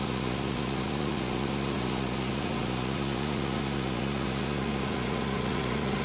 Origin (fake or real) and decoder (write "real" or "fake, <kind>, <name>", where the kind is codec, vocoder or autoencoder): fake, vocoder, Vocos